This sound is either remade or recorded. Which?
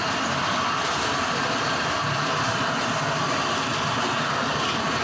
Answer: recorded